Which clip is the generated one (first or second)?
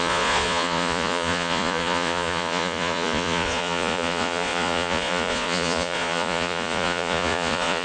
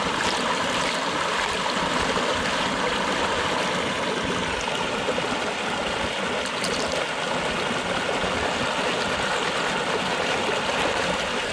first